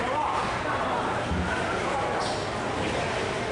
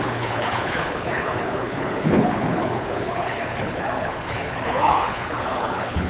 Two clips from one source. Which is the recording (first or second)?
first